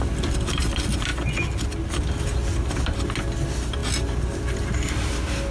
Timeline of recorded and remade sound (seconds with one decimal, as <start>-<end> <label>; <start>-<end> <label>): 0.0-5.5 recorded